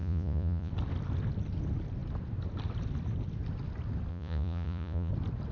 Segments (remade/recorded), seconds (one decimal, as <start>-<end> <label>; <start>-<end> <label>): 0.0-0.7 remade; 0.7-4.1 recorded; 4.1-5.1 remade; 5.1-5.5 recorded